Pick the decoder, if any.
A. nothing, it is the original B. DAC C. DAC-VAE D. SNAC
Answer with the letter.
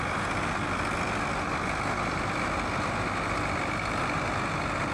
A